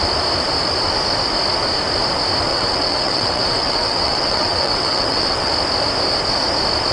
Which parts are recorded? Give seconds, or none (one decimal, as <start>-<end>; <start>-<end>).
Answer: 0.0-2.5; 5.5-6.9

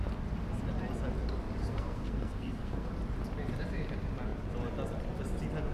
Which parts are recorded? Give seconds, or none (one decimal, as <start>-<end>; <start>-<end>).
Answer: 0.0-1.6; 2.9-5.7

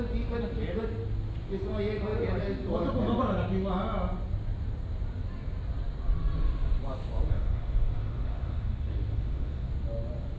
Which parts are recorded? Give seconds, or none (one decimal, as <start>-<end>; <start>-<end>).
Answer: 0.0-7.3; 9.7-10.4

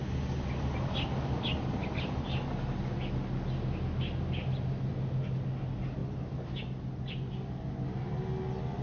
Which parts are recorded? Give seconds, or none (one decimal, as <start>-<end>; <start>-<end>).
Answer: 0.0-8.8

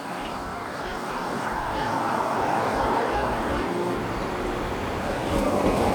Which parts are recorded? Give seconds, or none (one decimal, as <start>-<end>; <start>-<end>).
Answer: 4.0-5.0